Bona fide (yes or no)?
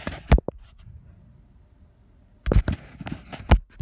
yes